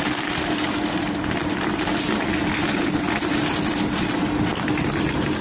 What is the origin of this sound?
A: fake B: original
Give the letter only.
B